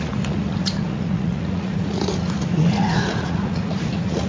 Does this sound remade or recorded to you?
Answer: remade